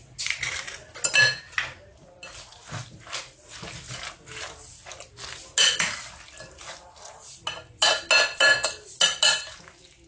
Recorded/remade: recorded